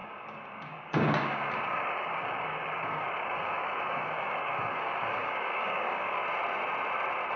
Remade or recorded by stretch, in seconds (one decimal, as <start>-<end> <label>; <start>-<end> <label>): 0.0-6.2 remade; 6.2-7.4 recorded